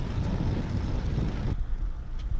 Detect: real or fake real